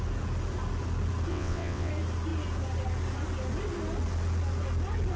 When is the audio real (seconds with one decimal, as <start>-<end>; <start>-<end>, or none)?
0.0-1.3; 1.9-5.2